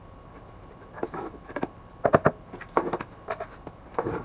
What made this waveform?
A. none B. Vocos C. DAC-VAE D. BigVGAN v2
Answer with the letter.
A